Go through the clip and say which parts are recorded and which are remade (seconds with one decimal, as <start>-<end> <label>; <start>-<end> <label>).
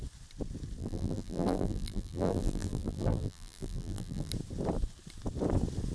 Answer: 0.0-0.8 recorded; 0.8-4.3 remade; 4.3-5.9 recorded